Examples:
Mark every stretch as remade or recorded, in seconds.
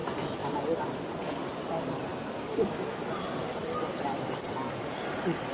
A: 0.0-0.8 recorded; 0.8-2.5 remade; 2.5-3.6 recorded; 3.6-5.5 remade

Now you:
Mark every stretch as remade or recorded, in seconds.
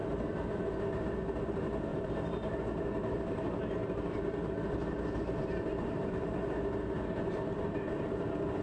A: 0.0-1.9 recorded; 1.9-3.6 remade; 3.6-8.6 recorded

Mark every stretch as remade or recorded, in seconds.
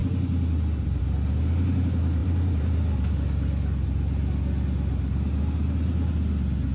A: 0.0-2.2 recorded; 2.2-3.1 remade; 3.1-6.7 recorded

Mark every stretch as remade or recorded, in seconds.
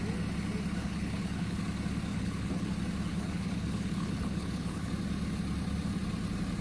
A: 0.0-0.8 recorded; 0.8-1.6 remade; 1.6-2.1 recorded; 2.1-2.7 remade; 2.7-3.1 recorded; 3.1-4.9 remade; 4.9-6.6 recorded